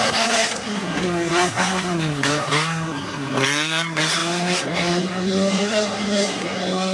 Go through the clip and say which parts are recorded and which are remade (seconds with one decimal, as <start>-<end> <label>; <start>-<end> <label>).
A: 0.0-6.9 remade